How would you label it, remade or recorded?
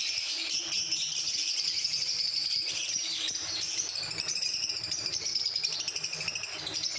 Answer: remade